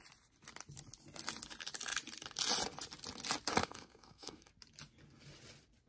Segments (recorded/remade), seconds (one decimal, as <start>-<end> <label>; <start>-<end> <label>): 0.0-3.6 recorded; 3.6-4.5 remade; 4.5-5.9 recorded